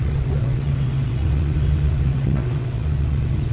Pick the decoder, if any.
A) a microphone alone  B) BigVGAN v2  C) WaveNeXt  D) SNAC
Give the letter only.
C